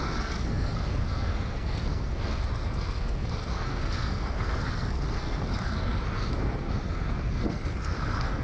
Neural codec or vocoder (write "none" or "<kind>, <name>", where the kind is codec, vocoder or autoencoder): codec, SNAC